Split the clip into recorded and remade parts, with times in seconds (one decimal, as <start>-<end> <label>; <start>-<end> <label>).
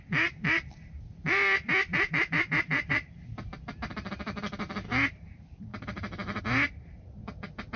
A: 0.0-1.9 recorded; 1.9-3.2 remade; 3.2-5.7 recorded; 5.7-6.4 remade; 6.4-7.8 recorded